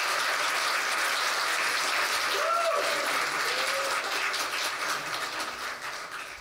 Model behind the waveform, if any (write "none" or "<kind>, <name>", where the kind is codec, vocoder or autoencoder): none